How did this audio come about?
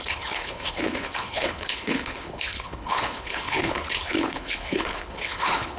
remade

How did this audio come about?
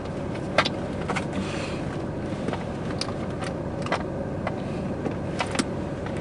recorded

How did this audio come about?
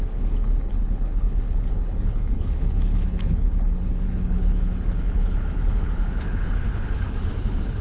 remade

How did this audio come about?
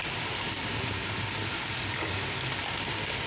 recorded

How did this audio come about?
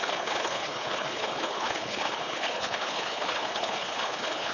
remade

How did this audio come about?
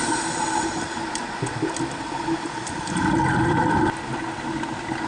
recorded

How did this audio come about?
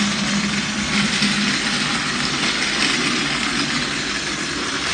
recorded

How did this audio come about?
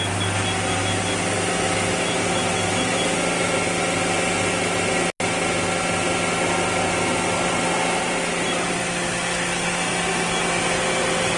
recorded